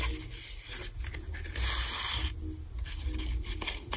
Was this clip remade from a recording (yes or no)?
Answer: no